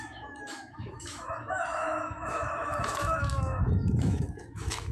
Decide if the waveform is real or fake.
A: fake